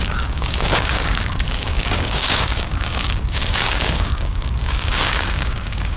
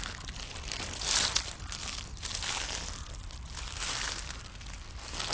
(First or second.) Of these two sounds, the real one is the second